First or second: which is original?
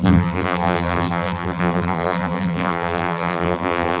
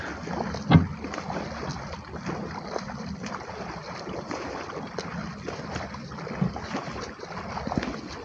second